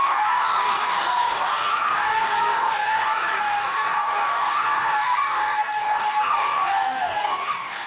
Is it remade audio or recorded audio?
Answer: remade